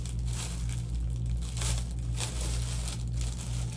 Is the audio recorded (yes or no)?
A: yes